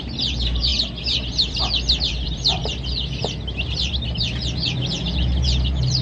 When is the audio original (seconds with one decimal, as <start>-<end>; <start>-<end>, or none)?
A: 0.7-1.3; 2.6-3.7